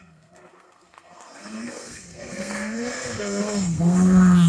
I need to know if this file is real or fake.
fake